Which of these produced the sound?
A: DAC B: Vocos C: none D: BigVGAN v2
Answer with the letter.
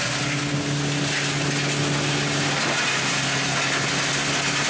C